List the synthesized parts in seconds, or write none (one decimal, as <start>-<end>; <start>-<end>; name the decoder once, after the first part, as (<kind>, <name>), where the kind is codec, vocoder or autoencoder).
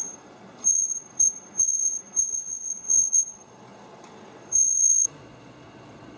0.0-6.2 (vocoder, Vocos)